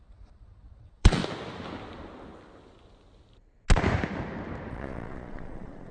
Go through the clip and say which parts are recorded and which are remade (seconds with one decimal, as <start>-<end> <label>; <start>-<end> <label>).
0.0-1.2 remade; 1.2-4.7 recorded; 4.7-5.9 remade